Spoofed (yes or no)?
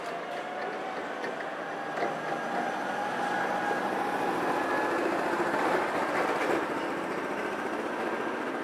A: no